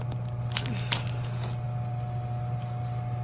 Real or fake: real